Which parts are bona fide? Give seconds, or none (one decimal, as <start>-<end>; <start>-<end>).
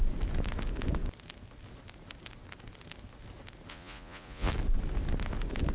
0.0-3.7; 4.5-5.7